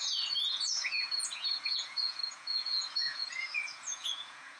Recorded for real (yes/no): no